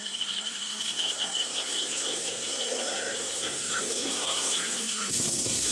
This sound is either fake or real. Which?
fake